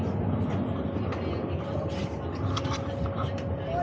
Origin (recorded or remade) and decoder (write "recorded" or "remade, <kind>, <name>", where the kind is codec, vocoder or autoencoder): recorded